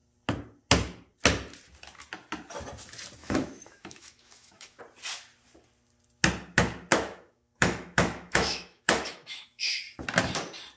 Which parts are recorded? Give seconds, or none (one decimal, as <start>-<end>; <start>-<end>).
0.0-3.2; 4.8-6.9; 9.8-10.8